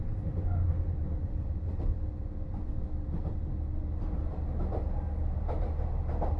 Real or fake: real